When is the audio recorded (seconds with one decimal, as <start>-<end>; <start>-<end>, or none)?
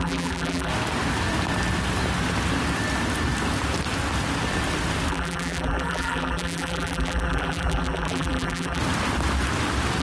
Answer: 0.7-5.1; 8.8-10.0